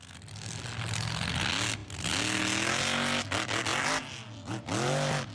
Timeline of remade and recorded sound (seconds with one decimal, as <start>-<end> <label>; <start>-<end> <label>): 0.0-5.3 recorded